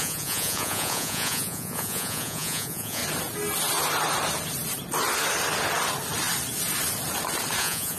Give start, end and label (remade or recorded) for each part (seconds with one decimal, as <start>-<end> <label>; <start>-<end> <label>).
0.0-3.0 remade; 3.0-7.6 recorded; 7.6-8.0 remade

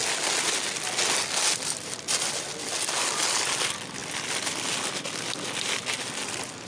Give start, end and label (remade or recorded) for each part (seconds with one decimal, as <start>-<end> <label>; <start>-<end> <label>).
0.0-6.7 recorded

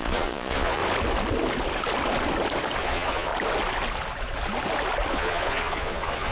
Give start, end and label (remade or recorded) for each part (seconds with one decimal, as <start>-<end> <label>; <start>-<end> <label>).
0.0-0.8 remade; 0.8-2.8 recorded; 2.8-3.3 remade; 3.3-5.1 recorded; 5.1-6.3 remade

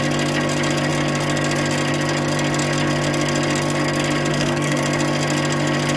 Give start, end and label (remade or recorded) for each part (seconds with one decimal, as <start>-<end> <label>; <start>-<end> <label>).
0.0-4.3 recorded; 4.3-4.8 remade; 4.8-6.0 recorded

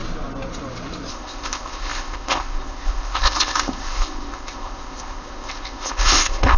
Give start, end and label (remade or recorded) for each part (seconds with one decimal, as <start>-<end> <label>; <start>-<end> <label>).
0.0-1.1 recorded; 1.1-6.6 remade

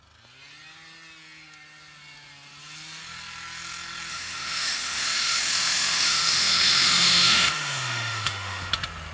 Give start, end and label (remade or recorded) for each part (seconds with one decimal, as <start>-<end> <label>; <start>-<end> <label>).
0.0-4.1 recorded; 4.1-8.7 remade; 8.7-9.1 recorded